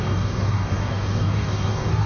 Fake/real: fake